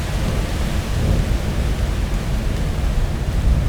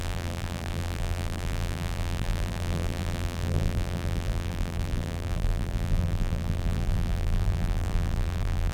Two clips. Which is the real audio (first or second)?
first